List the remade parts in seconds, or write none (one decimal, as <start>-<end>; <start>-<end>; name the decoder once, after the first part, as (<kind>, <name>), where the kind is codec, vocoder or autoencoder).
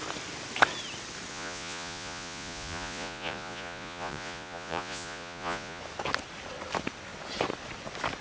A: 1.3-5.8 (vocoder, Vocos)